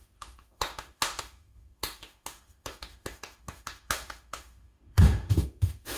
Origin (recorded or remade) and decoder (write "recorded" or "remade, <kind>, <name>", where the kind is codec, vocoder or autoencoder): remade, autoencoder, DAC-VAE